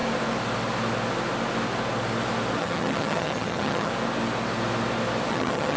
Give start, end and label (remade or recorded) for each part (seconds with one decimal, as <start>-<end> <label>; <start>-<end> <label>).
0.0-2.6 recorded; 2.6-3.9 remade; 3.9-5.3 recorded; 5.3-5.8 remade